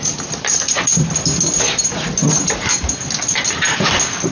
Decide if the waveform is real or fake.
real